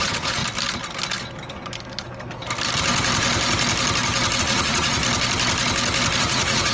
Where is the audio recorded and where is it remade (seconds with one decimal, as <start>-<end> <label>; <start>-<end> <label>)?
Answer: 0.0-0.4 remade; 0.4-4.4 recorded; 4.4-5.0 remade; 5.0-6.2 recorded; 6.2-6.7 remade